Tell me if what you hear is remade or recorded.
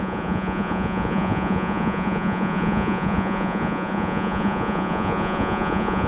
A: remade